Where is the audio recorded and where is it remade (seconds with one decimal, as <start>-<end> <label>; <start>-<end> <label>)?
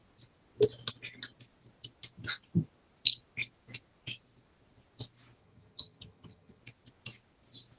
0.0-5.4 recorded; 5.4-6.6 remade; 6.6-7.8 recorded